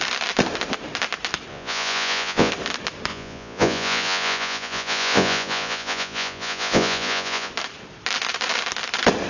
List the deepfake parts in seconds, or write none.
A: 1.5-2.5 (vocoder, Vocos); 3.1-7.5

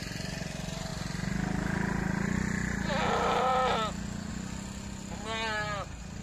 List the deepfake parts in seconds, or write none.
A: none

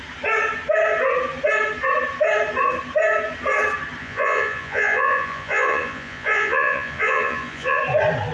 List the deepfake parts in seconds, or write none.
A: 4.0-7.8 (vocoder, Vocos)

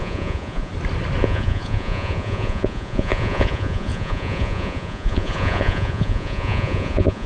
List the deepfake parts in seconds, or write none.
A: 0.0-0.7 (vocoder, Vocos); 1.2-7.3